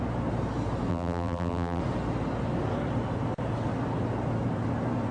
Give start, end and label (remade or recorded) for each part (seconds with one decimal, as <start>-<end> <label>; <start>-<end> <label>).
0.0-0.9 recorded; 0.9-1.8 remade; 1.8-5.1 recorded